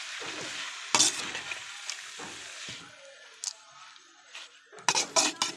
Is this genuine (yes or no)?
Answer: yes